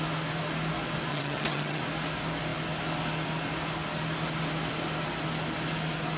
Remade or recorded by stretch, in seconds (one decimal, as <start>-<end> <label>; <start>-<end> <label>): 0.0-1.1 recorded; 1.1-1.8 remade; 1.8-6.2 recorded